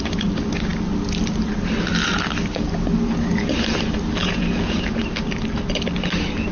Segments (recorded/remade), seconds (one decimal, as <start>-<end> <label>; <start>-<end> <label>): 0.0-4.2 recorded; 4.2-5.0 remade; 5.0-6.5 recorded